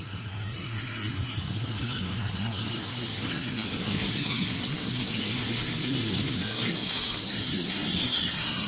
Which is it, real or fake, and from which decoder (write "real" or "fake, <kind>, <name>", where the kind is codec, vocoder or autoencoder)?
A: fake, codec, SNAC